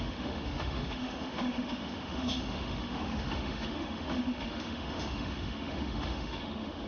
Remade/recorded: remade